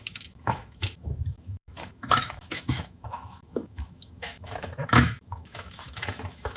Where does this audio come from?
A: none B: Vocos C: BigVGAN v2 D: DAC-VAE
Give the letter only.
D